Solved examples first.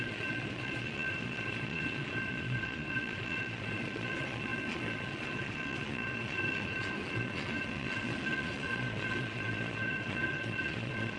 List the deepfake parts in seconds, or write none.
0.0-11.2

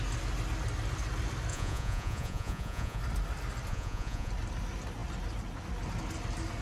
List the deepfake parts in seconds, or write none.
1.5-3.0; 3.7-4.3

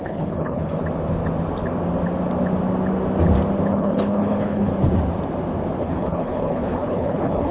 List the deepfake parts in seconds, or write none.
0.0-0.8; 3.7-4.7; 5.8-7.5

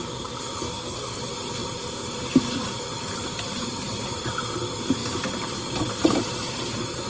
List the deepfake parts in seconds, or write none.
0.6-1.2

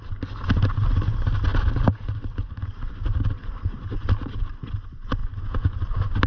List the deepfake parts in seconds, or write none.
none

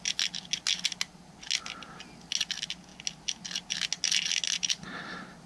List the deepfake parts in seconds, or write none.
none